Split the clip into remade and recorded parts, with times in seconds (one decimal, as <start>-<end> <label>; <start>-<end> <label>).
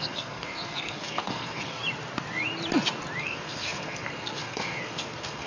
0.0-1.8 remade; 1.8-3.2 recorded; 3.2-5.5 remade